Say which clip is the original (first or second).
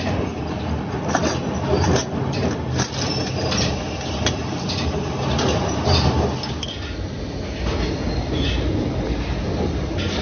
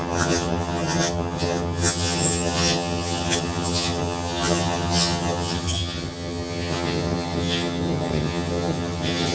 first